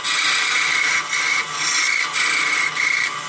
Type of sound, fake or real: real